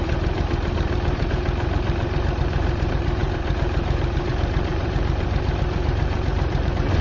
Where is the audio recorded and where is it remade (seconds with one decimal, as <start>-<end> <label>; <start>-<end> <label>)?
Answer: 0.0-7.0 remade